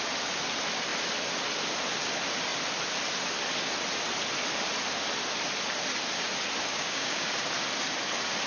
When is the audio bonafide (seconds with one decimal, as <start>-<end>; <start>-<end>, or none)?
0.0-6.7; 7.3-8.5